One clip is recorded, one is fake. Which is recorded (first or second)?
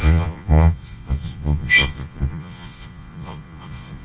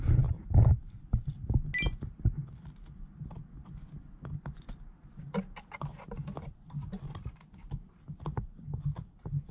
second